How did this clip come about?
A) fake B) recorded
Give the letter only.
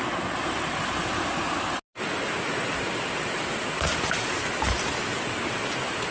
B